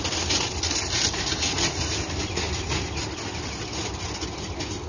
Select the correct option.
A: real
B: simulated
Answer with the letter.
A